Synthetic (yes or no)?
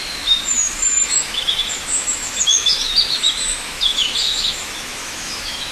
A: yes